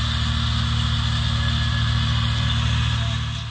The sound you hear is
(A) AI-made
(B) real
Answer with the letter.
B